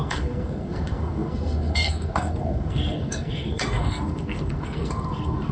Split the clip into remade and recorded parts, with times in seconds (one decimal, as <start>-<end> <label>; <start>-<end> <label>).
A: 0.0-5.5 remade